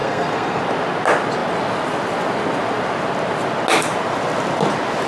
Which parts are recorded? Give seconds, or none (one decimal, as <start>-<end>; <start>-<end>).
0.6-5.1

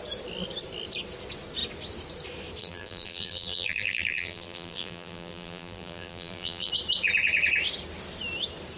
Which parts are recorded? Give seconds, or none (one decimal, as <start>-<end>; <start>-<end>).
0.0-2.6; 6.7-8.8